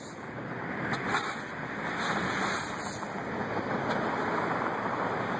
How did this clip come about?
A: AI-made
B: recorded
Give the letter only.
B